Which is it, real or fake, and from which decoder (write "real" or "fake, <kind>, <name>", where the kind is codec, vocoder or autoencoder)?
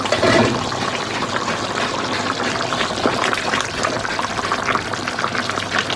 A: real